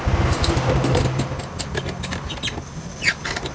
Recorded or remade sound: recorded